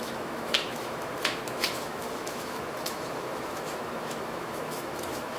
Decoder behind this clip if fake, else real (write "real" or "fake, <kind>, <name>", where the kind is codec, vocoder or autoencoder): fake, autoencoder, DAC-VAE